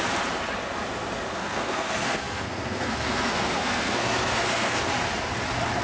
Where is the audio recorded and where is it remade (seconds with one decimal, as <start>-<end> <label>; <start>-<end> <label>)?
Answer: 0.0-1.3 recorded; 1.3-4.8 remade; 4.8-5.8 recorded